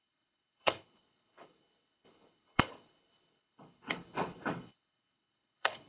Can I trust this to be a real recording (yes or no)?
no